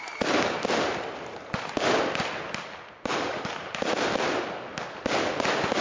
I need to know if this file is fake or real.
real